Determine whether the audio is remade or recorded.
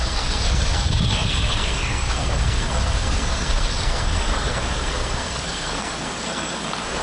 remade